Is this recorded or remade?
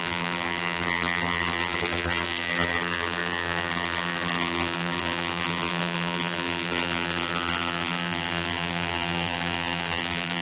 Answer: remade